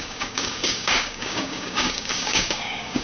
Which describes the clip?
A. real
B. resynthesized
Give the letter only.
B